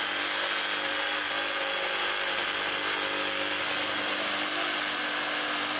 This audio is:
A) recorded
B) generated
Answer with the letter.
A